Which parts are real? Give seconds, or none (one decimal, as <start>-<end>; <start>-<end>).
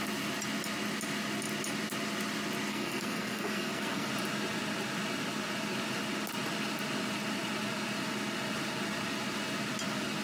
0.0-2.7; 4.1-10.2